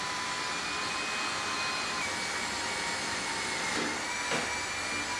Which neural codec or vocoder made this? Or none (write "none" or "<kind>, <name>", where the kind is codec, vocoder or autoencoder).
none